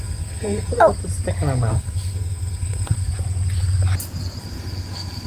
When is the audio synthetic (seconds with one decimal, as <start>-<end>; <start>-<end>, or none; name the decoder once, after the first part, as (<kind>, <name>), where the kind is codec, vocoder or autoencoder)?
0.0-0.7 (codec, SNAC); 1.7-3.1; 4.4-5.3